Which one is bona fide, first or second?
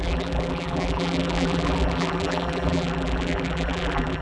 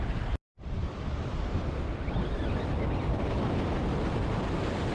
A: second